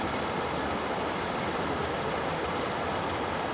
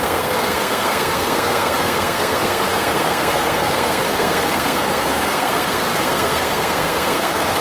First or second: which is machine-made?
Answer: second